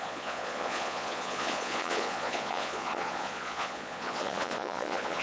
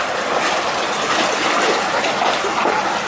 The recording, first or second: second